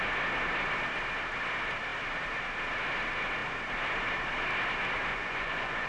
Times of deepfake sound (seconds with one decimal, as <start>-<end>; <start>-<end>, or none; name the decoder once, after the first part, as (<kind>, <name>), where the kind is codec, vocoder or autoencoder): 5.1-5.9 (vocoder, Vocos)